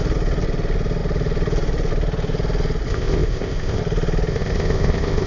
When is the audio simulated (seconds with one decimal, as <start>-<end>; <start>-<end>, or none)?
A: 2.9-3.8; 4.3-5.3

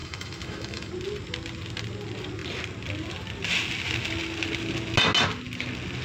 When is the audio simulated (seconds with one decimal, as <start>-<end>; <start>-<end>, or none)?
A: 0.0-0.9

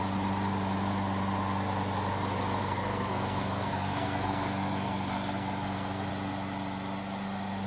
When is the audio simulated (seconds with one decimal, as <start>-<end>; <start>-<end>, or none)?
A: 2.6-6.1